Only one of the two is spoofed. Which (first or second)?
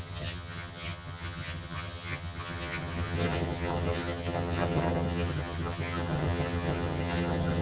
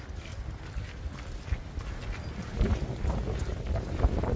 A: first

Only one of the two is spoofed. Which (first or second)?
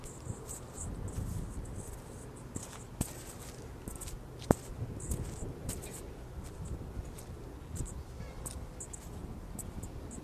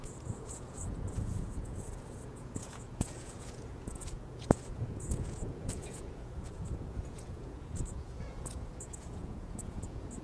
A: second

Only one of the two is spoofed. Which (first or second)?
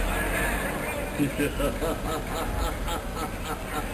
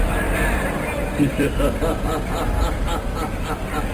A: second